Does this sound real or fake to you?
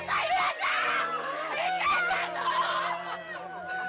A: real